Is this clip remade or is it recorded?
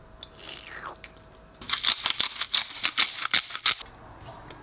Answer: recorded